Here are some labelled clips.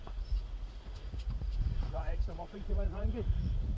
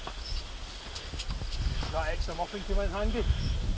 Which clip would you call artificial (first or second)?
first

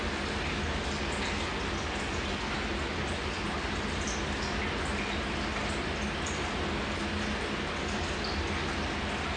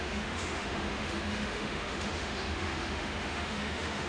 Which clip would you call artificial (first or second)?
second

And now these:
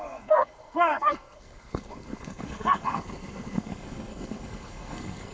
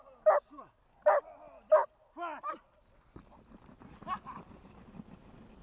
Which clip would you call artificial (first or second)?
first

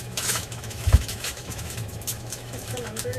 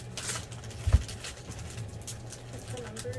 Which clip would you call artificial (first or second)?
first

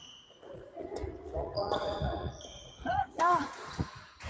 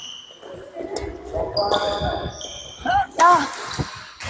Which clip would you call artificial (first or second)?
first